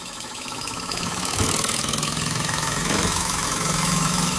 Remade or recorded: remade